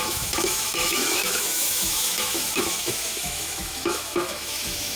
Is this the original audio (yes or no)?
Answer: no